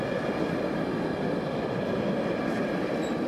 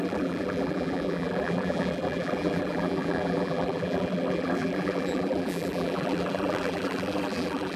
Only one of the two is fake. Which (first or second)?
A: second